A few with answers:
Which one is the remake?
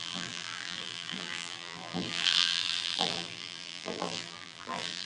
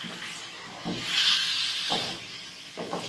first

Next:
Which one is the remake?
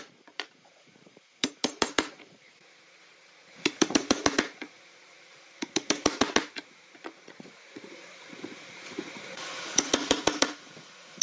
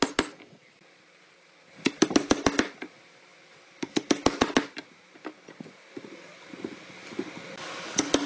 first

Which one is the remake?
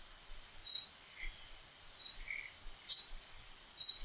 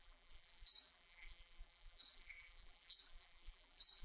second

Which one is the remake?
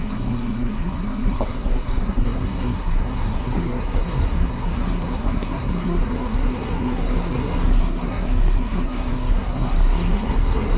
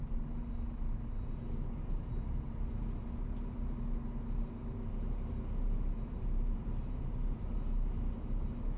first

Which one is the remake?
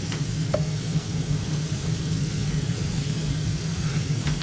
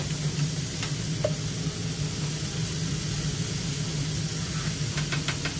first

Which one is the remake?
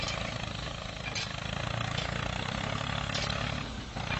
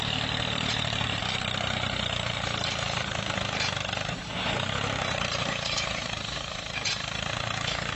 second